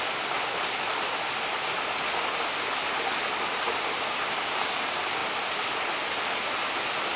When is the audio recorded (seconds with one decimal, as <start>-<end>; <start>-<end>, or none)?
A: 0.0-0.4; 2.1-7.2